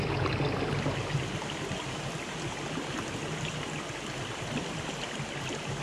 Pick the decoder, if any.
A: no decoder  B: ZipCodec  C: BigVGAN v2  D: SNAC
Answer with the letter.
A